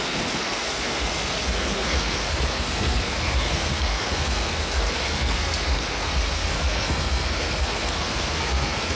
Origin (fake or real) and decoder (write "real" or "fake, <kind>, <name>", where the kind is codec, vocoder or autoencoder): fake, codec, SNAC